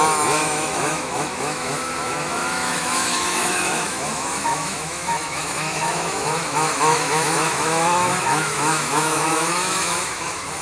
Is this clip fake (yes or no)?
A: yes